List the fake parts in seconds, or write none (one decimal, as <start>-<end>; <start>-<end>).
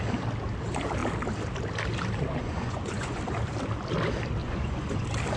2.4-3.2; 4.4-5.0